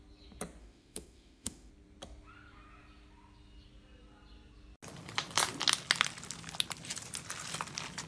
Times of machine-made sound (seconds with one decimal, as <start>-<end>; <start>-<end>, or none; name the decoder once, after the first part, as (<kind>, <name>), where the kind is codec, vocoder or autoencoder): 0.6-1.7 (autoencoder, DAC-VAE)